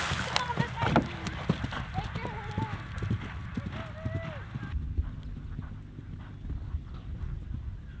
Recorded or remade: recorded